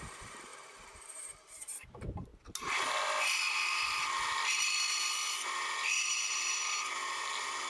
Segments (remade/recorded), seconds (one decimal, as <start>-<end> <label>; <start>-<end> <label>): 0.0-2.3 remade; 2.3-6.2 recorded; 6.2-7.7 remade